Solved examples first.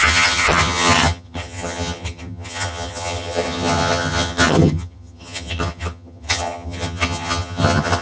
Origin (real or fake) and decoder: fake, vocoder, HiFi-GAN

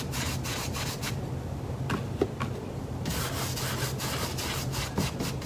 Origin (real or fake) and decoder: real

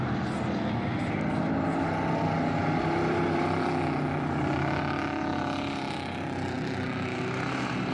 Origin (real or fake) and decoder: real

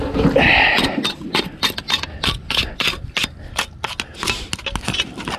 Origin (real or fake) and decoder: real